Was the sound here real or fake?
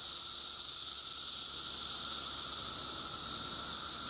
real